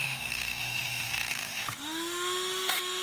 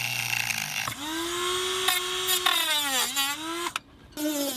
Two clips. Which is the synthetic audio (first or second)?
first